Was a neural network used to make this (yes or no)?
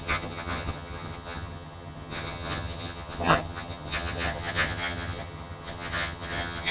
yes